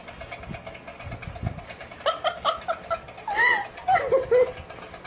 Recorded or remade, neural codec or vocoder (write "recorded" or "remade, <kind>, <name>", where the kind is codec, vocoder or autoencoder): recorded